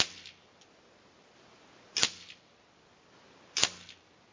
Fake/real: real